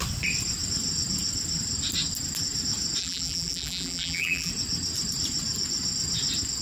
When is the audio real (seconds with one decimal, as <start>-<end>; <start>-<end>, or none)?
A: 0.0-3.0; 4.5-6.6